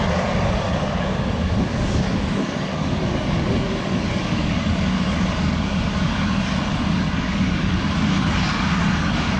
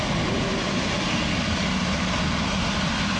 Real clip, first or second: second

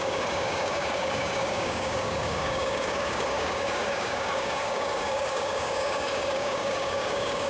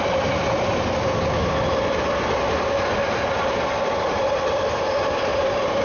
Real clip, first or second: second